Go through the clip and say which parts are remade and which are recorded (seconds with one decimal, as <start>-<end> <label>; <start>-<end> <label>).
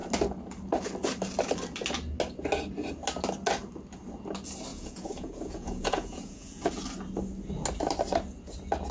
0.0-4.7 recorded; 4.7-6.7 remade; 6.7-8.9 recorded